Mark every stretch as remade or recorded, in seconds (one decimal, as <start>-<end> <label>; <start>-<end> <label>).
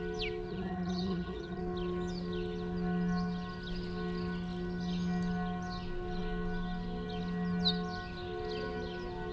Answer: 0.0-0.5 recorded; 0.5-1.6 remade; 1.6-9.3 recorded